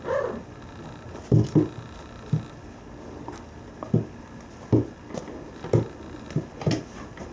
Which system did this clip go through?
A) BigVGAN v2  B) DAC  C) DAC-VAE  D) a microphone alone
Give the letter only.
D